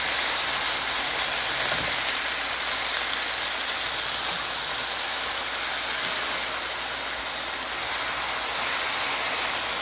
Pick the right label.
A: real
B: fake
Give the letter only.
A